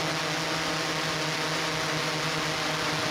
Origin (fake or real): real